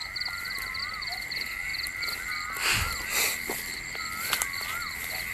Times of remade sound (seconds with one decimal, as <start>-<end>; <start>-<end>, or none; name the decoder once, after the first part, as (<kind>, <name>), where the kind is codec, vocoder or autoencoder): 0.8-1.7 (vocoder, BigVGAN v2)